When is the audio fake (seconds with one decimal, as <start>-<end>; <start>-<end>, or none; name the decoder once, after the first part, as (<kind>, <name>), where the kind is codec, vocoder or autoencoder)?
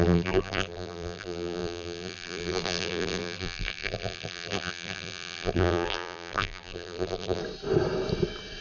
0.0-7.4 (vocoder, BigVGAN v2)